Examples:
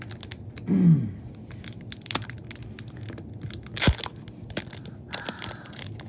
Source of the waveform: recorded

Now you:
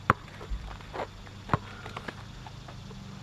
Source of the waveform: recorded